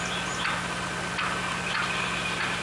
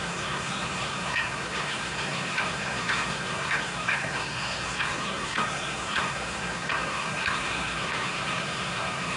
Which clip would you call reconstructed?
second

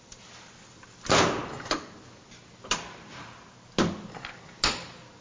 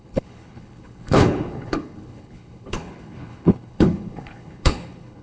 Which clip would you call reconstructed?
second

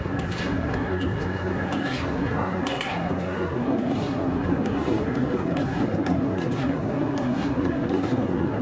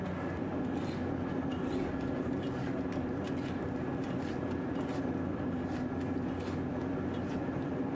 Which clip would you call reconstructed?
first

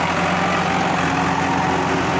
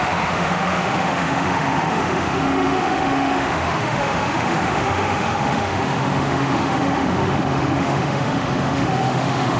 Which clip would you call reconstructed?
second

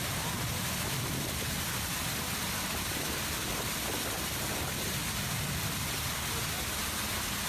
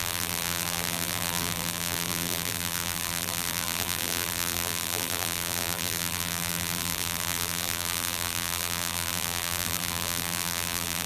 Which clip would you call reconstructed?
second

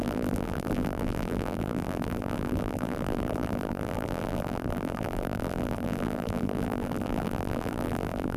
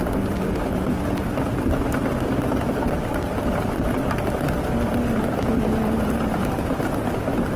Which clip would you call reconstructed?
first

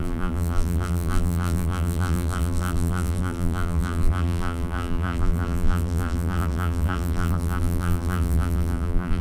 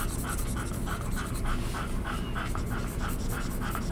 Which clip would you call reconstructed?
first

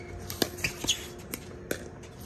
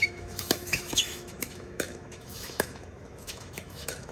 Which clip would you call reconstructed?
second